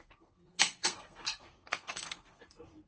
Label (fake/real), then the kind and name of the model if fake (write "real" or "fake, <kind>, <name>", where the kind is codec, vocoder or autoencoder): fake, codec, SNAC